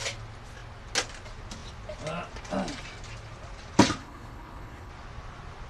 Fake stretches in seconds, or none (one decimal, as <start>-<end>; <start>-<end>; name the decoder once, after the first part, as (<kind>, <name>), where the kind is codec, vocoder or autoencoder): 4.0-4.9 (codec, HILCodec)

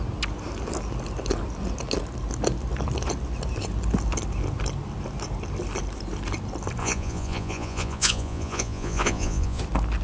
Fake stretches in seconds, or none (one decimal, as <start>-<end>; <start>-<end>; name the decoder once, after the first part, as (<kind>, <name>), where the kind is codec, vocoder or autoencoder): 6.8-9.6 (vocoder, Vocos)

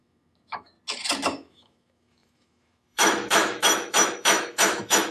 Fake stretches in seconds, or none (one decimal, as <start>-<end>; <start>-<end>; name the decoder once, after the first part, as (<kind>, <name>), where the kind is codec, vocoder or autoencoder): 0.0-0.7 (autoencoder, DAC-VAE); 1.3-5.1

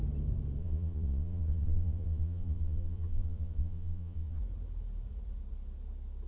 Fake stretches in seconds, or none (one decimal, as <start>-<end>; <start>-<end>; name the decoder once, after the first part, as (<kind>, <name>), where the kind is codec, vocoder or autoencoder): 0.6-4.4 (vocoder, Vocos)

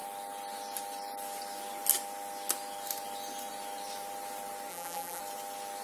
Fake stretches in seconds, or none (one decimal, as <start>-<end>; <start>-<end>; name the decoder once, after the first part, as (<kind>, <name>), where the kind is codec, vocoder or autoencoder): 4.7-5.2 (vocoder, BigVGAN v2)